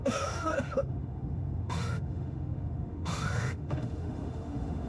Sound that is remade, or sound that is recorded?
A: remade